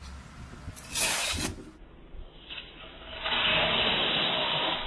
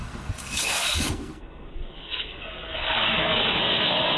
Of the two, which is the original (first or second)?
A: first